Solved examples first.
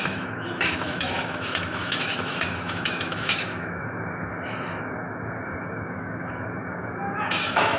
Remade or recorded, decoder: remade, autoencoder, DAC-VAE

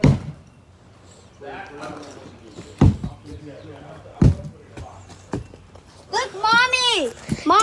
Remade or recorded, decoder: recorded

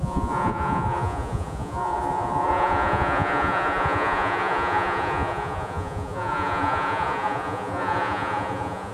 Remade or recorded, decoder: remade, vocoder, Vocos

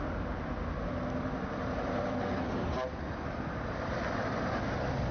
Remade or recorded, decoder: recorded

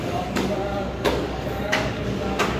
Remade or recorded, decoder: remade, codec, DAC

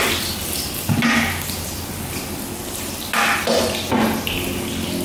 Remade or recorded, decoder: recorded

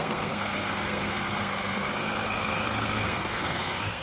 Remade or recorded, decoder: remade, codec, SNAC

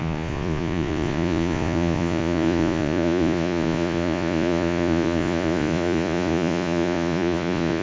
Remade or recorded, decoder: remade, vocoder, Vocos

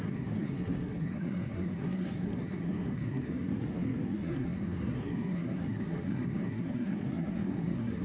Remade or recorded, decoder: remade, codec, SNAC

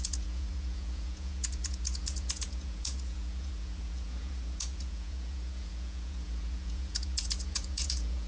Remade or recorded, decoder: remade, vocoder, Vocos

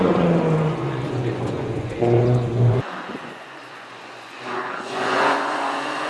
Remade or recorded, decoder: remade, vocoder, Vocos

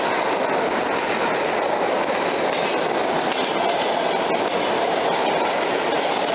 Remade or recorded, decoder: recorded